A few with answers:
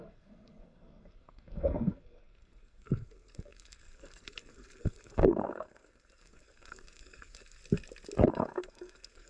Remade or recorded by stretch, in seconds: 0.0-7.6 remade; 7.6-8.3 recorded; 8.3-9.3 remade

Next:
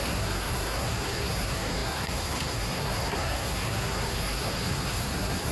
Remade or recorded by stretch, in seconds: 0.0-5.5 remade

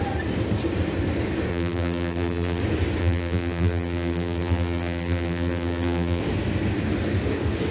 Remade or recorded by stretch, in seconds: 0.0-1.5 recorded; 1.5-2.6 remade; 2.6-3.0 recorded; 3.0-6.2 remade; 6.2-7.7 recorded

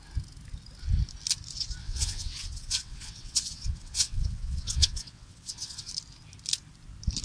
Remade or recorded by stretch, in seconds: 0.0-1.8 recorded; 1.8-5.9 remade; 5.9-7.2 recorded

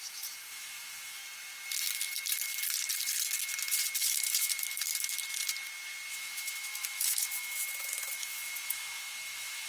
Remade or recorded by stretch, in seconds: 0.0-1.2 remade; 1.2-4.0 recorded; 4.0-4.9 remade; 4.9-6.1 recorded; 6.1-9.7 remade

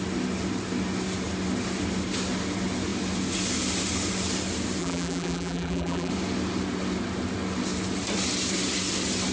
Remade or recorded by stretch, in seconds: 0.0-4.8 recorded; 4.8-6.1 remade; 6.1-9.3 recorded